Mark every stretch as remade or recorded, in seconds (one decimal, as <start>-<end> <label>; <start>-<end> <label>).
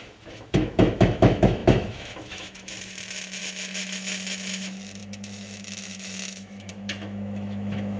0.0-8.0 remade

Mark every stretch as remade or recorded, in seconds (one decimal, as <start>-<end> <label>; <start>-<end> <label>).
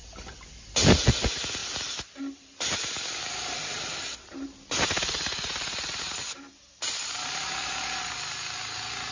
0.0-9.1 recorded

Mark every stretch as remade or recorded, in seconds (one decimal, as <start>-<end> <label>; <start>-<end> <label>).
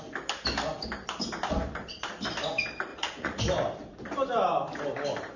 0.0-2.9 recorded; 2.9-3.4 remade; 3.4-5.4 recorded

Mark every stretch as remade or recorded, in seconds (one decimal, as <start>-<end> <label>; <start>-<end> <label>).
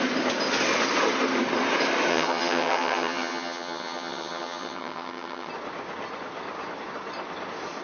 0.0-2.1 recorded; 2.1-5.5 remade; 5.5-7.8 recorded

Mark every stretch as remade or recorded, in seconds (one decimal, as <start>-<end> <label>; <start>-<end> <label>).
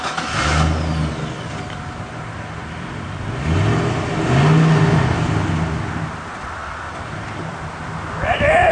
0.0-2.6 recorded; 2.6-3.3 remade; 3.3-6.6 recorded; 6.6-7.5 remade; 7.5-8.7 recorded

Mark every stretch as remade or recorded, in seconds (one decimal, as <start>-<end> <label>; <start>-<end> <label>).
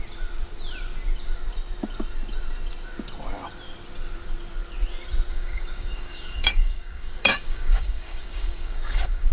0.0-5.3 recorded; 5.3-9.3 remade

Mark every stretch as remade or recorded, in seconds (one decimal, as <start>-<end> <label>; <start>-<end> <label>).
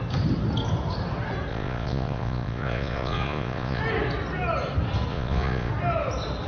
0.0-1.5 recorded; 1.5-3.8 remade; 3.8-5.1 recorded; 5.1-5.7 remade; 5.7-6.5 recorded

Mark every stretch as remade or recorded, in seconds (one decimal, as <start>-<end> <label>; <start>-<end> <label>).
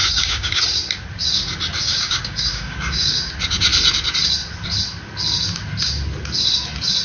0.0-0.6 remade; 0.6-1.8 recorded; 1.8-3.3 remade; 3.3-7.0 recorded